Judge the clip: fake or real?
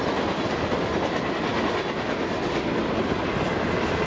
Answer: real